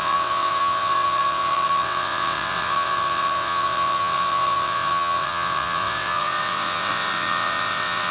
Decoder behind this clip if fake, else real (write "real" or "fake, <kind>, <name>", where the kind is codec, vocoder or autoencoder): fake, vocoder, WaveNeXt